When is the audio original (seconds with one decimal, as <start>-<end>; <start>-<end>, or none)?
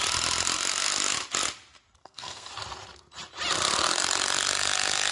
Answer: 0.0-2.0; 2.5-5.1